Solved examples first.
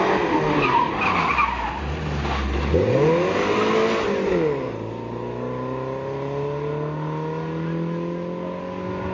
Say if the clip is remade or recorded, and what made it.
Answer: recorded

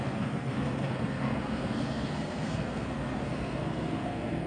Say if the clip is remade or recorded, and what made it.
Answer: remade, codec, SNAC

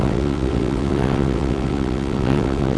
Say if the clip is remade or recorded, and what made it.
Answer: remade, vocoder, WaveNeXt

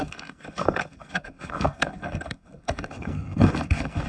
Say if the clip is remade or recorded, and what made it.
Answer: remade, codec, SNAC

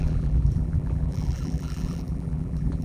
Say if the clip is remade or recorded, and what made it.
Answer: remade, vocoder, BigVGAN v2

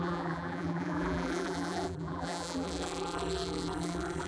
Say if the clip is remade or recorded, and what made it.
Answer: remade, vocoder, BigVGAN v2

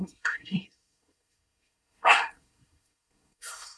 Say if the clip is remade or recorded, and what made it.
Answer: remade, codec, SNAC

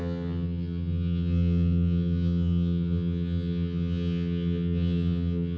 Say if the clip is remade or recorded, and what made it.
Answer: remade, vocoder, HiFi-GAN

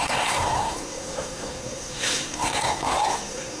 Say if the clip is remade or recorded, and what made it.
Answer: remade, codec, SNAC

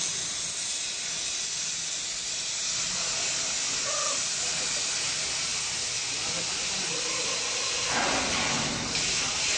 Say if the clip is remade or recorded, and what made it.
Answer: recorded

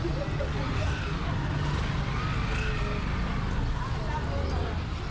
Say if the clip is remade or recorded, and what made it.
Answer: recorded